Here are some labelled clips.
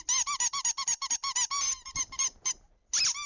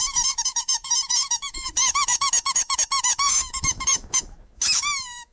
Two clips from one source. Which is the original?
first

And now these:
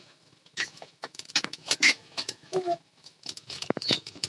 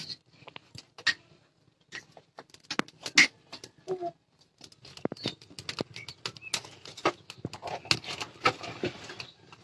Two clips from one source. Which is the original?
second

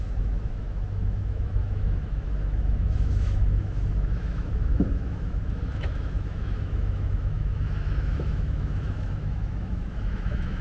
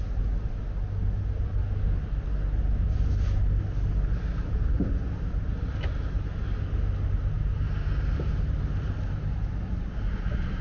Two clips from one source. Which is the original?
second